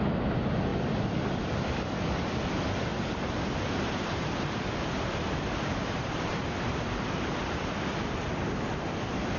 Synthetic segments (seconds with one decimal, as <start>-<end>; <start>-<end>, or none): 2.9-7.8

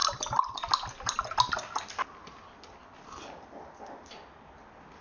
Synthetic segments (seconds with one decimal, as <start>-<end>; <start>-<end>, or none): none

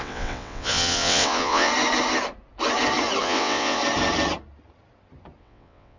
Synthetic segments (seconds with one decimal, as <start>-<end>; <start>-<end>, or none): 0.0-1.7; 3.2-3.8; 5.4-6.0

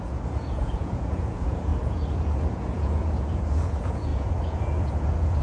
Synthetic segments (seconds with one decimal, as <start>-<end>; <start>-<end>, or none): 0.0-5.4

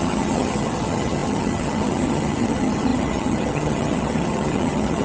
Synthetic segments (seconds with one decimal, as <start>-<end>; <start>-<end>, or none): 0.0-5.0

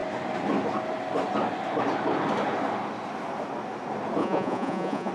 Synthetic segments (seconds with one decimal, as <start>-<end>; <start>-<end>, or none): 4.2-5.1

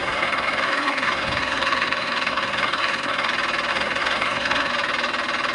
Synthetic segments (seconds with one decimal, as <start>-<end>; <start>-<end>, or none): 0.0-3.3; 3.7-4.7